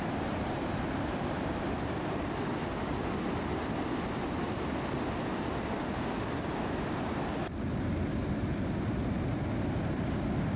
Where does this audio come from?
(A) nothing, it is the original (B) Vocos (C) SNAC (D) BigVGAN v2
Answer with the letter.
A